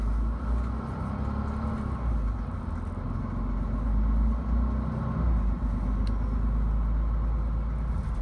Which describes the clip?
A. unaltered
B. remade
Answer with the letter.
A